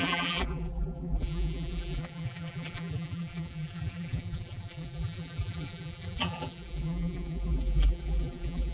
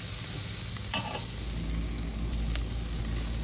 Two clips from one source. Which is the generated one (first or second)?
first